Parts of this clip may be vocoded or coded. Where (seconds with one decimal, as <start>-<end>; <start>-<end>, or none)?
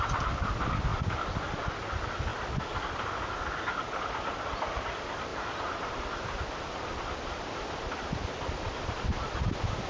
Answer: 5.3-5.9